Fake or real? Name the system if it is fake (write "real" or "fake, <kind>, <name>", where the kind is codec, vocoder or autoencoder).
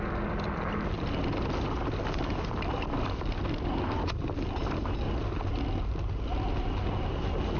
real